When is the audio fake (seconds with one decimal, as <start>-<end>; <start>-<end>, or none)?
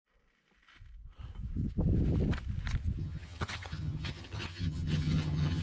3.0-5.6